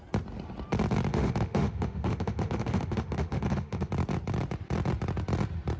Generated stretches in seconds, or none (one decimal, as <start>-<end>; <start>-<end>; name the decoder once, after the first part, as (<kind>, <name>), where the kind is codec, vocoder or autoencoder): 1.1-3.9 (autoencoder, DAC-VAE)